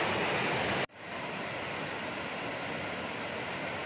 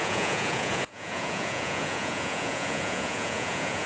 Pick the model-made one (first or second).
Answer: second